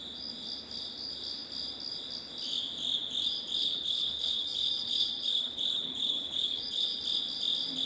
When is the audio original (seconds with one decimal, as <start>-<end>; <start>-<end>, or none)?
0.0-3.6; 7.0-7.9

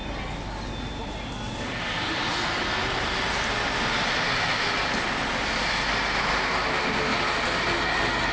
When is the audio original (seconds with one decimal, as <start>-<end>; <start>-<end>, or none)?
0.0-8.3

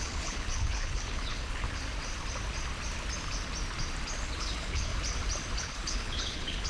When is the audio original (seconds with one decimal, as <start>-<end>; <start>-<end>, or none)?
1.8-4.4; 4.9-5.6

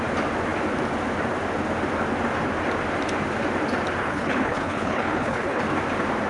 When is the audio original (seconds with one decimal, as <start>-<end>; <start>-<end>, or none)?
0.0-4.0; 5.6-6.3

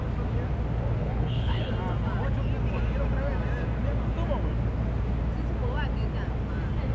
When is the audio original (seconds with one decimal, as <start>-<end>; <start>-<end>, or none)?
0.0-1.0; 1.7-6.9